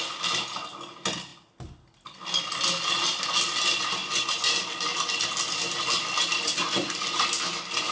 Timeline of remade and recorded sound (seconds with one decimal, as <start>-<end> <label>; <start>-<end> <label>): 0.0-4.0 recorded; 4.0-4.5 remade; 4.5-7.9 recorded

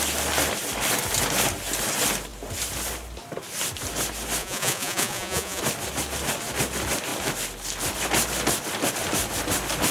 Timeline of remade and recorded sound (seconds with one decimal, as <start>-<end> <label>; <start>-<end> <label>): 0.0-4.4 recorded; 4.4-5.6 remade; 5.6-9.9 recorded

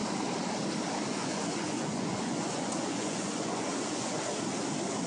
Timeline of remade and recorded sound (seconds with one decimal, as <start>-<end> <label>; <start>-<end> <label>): 0.0-1.1 recorded; 1.1-4.2 remade; 4.2-5.1 recorded